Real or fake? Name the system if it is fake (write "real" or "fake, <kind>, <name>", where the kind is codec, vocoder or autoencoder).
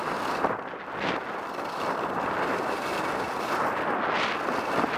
real